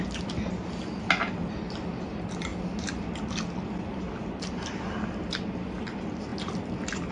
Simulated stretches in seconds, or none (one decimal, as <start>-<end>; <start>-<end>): none